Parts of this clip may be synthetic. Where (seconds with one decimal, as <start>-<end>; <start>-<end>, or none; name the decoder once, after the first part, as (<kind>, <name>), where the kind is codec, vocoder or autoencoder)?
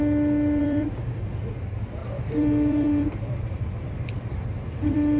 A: 0.6-1.5 (vocoder, BigVGAN v2); 2.0-5.2